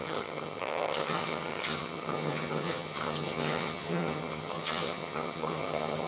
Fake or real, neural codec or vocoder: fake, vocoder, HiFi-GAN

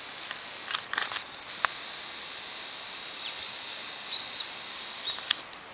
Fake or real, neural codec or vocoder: real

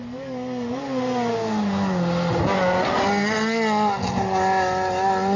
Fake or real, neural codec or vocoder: real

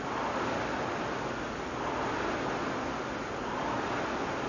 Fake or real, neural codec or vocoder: real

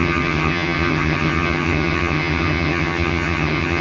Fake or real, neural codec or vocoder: fake, vocoder, HiFi-GAN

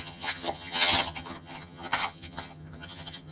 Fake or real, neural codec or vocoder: fake, vocoder, HiFi-GAN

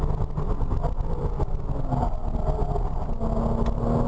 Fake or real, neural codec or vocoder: real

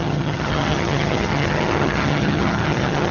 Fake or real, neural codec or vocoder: fake, vocoder, HiFi-GAN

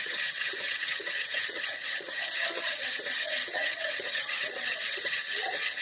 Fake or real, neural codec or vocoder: fake, vocoder, HiFi-GAN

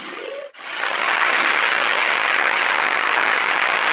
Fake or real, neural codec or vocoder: fake, vocoder, HiFi-GAN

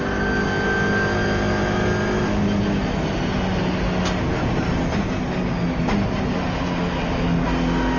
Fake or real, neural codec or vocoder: real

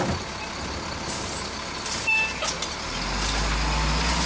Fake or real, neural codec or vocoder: real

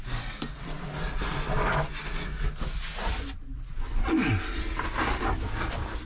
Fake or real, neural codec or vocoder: real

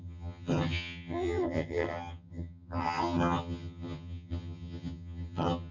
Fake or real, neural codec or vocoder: fake, vocoder, HiFi-GAN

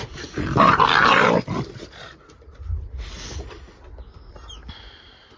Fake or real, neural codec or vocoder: real